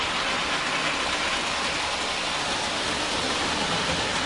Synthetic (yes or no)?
no